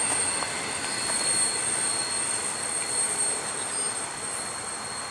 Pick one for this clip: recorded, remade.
recorded